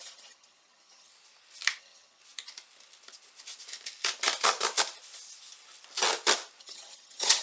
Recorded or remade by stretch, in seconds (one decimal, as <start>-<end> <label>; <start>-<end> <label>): 0.0-1.1 remade; 1.1-1.8 recorded; 1.8-2.2 remade; 2.2-6.6 recorded; 6.6-7.4 remade